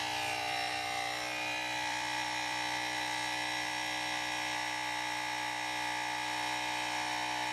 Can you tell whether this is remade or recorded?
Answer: remade